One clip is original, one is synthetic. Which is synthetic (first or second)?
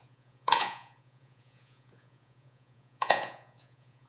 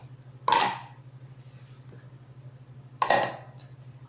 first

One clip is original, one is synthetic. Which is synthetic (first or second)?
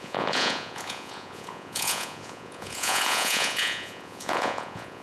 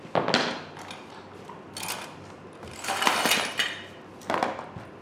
first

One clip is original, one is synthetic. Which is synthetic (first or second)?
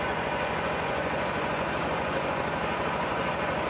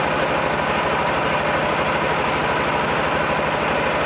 first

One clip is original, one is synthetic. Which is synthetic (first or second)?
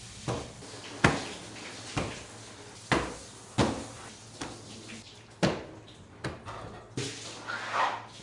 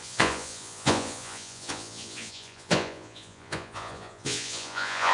second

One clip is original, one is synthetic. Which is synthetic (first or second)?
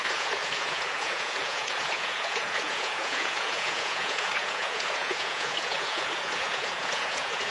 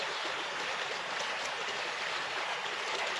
first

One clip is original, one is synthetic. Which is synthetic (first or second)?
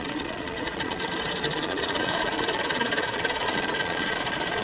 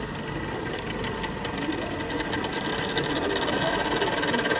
first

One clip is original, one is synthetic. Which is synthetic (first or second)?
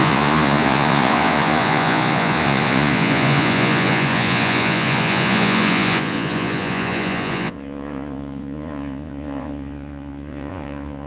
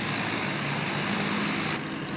first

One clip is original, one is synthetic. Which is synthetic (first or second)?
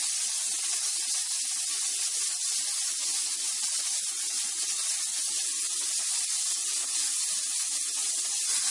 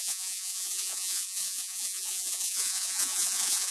second